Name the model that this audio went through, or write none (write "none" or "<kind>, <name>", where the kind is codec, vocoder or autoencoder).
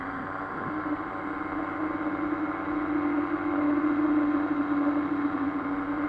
none